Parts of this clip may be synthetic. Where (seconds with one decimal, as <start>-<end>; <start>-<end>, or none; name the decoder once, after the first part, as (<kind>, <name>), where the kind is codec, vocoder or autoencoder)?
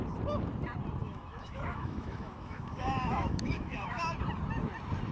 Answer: 1.0-4.1 (autoencoder, DAC-VAE)